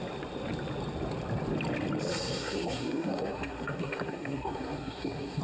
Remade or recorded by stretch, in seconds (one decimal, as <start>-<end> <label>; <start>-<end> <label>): 0.0-2.1 recorded; 2.1-5.4 remade